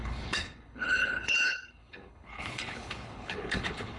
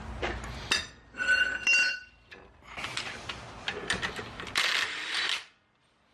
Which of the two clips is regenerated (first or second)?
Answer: first